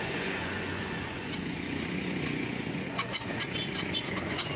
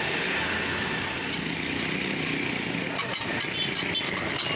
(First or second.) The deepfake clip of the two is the first